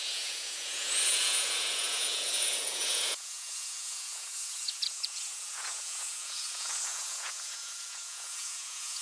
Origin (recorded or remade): remade